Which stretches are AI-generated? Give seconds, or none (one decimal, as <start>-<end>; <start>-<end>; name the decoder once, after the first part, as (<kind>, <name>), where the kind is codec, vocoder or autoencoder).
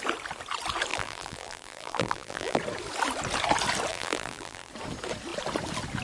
0.9-2.6 (vocoder, BigVGAN v2); 3.9-4.7